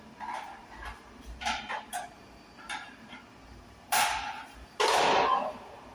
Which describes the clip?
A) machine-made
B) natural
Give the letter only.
A